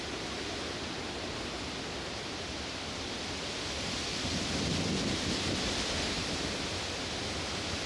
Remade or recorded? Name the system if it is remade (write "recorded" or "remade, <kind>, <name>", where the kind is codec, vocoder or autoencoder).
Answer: recorded